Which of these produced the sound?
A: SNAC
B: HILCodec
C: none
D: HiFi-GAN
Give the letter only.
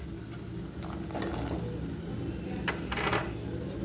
C